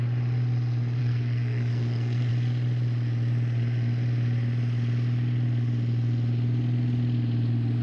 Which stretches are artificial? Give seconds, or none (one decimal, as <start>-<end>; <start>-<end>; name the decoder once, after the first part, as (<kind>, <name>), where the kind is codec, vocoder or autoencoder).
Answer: 1.0-2.3 (codec, SNAC)